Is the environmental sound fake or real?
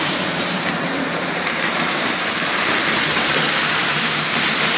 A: fake